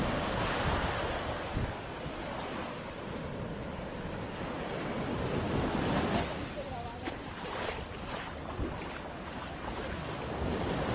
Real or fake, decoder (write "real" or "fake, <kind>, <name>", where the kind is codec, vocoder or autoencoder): real